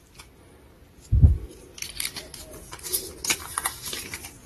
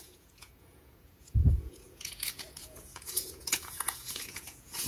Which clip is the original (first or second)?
first